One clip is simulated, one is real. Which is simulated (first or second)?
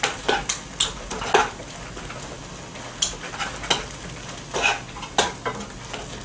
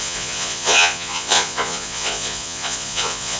second